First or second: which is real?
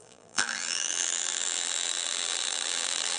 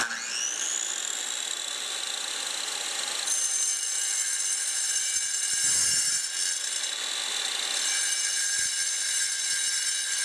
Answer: second